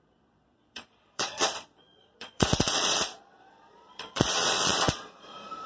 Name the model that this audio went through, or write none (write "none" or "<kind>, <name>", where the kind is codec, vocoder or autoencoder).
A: vocoder, Vocos